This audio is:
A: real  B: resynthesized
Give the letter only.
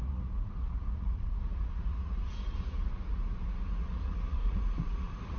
B